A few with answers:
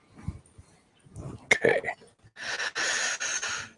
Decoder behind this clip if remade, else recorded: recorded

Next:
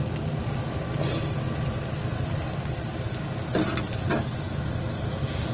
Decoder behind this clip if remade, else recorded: recorded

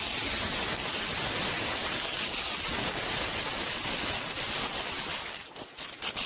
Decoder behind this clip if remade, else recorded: recorded